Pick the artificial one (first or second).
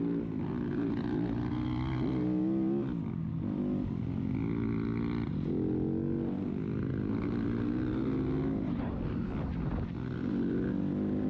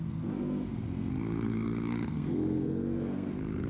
second